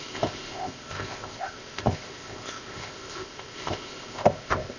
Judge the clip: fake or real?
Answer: fake